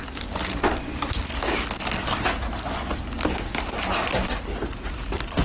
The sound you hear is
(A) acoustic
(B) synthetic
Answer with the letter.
A